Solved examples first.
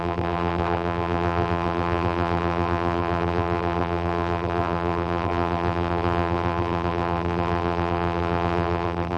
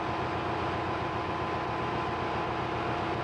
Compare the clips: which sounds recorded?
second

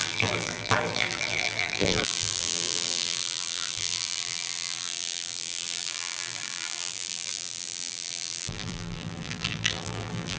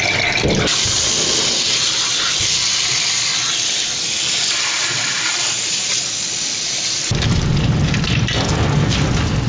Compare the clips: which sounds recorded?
second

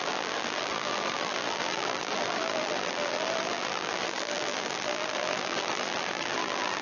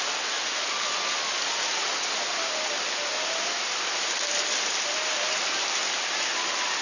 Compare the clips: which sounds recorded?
second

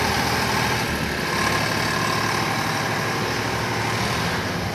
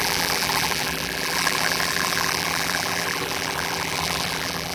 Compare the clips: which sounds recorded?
first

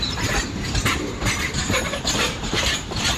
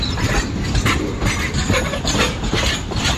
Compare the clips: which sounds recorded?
second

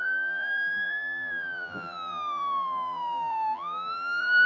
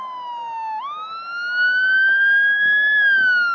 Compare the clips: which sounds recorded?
second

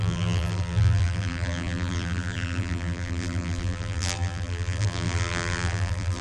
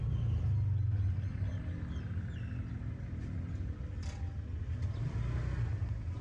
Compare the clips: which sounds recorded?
second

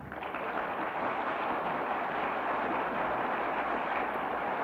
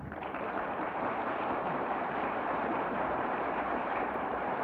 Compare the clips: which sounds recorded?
first